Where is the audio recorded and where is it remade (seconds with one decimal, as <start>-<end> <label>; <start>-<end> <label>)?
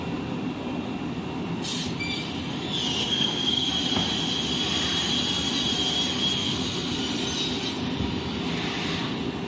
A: 0.0-3.0 recorded; 3.0-3.7 remade; 3.7-6.4 recorded; 6.4-7.0 remade; 7.0-9.5 recorded